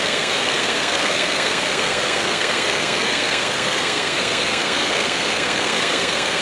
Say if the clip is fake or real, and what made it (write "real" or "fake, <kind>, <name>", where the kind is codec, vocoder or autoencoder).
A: fake, codec, SNAC